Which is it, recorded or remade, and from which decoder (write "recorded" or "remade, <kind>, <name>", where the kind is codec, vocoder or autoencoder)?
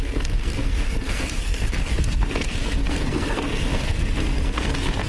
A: remade, codec, SNAC